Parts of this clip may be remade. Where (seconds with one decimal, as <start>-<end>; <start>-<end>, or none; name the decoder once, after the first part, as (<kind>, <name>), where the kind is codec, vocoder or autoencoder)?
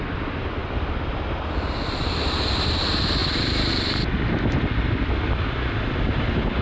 3.2-3.7 (vocoder, BigVGAN v2)